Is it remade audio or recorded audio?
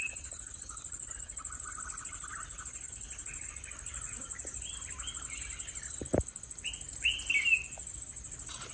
recorded